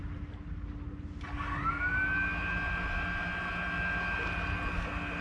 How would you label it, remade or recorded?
recorded